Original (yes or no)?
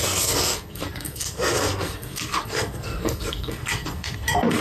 no